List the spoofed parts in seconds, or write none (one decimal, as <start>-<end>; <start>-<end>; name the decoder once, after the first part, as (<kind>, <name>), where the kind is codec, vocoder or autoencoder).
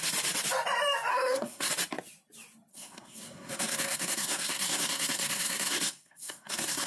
1.1-1.7 (codec, SNAC); 2.7-6.9